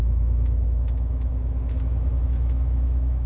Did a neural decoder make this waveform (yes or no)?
yes